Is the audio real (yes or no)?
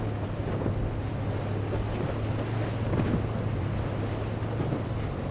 yes